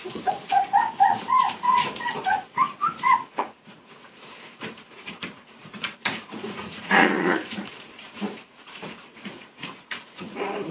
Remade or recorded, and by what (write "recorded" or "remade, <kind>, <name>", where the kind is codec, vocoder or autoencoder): remade, vocoder, Vocos